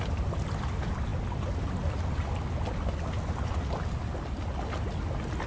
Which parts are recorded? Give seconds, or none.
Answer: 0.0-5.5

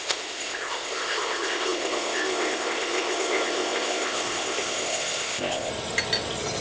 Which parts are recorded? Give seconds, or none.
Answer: 5.7-6.6

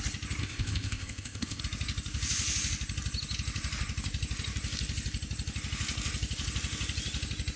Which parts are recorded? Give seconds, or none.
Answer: 0.0-0.4; 1.6-7.6

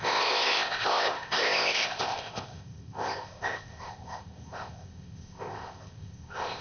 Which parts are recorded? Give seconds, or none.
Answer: none

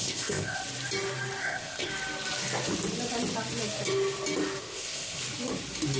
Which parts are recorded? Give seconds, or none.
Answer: 0.6-1.4; 1.9-4.6; 5.2-6.0

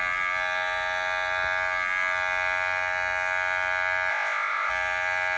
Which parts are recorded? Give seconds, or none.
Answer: 0.0-4.1; 4.7-5.4

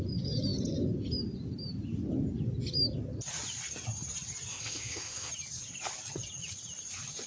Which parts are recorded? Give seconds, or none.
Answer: 0.0-4.5; 5.3-7.3